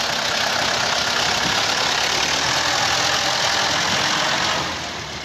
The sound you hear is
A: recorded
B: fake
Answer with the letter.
A